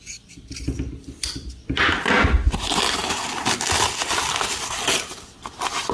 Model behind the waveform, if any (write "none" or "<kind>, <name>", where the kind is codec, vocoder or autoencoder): none